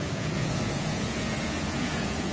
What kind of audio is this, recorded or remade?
remade